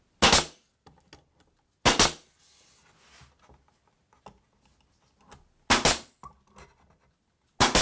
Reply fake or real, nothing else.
real